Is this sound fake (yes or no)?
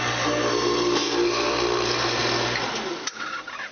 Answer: no